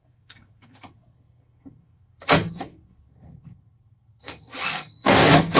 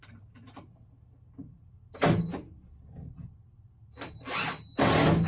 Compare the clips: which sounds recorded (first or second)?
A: second